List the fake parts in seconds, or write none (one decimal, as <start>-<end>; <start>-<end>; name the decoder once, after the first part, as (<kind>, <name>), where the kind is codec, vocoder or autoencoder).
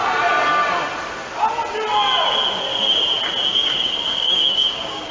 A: 3.5-5.1 (codec, DAC)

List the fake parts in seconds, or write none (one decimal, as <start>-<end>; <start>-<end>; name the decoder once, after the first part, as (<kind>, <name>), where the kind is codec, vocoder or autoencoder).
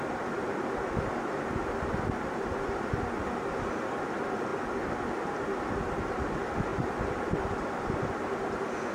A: 6.7-8.0 (vocoder, BigVGAN v2)